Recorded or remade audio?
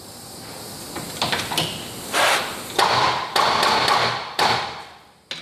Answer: recorded